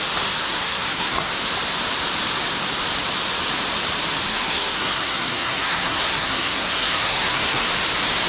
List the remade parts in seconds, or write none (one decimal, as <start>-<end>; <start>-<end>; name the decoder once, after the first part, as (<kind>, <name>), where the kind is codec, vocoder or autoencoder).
0.4-1.3 (codec, SNAC); 4.3-7.7